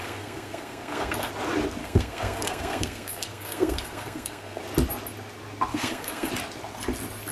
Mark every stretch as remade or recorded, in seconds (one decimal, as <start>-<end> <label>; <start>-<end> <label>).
0.0-1.3 remade; 1.3-1.8 recorded; 1.8-4.6 remade; 4.6-5.7 recorded; 5.7-6.3 remade; 6.3-7.3 recorded